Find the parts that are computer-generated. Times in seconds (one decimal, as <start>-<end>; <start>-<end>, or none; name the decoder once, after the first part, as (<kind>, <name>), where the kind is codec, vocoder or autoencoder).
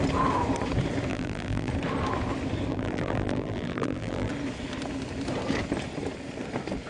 1.1-1.7 (vocoder, BigVGAN v2); 2.7-4.3